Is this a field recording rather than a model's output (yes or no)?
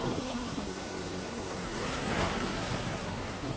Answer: no